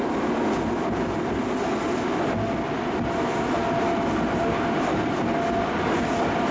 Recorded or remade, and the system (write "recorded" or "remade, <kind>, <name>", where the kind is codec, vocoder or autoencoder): recorded